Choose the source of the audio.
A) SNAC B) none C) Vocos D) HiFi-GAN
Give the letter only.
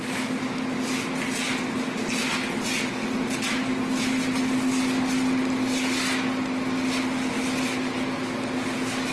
B